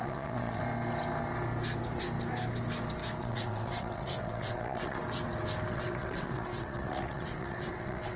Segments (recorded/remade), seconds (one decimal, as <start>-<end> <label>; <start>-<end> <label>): 0.0-0.6 remade; 0.6-3.2 recorded; 3.2-5.0 remade; 5.0-5.7 recorded; 5.7-8.2 remade